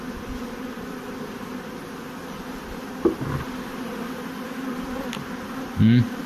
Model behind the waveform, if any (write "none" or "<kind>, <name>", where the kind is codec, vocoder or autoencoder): none